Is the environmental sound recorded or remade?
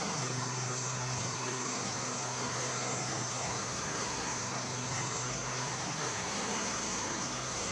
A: remade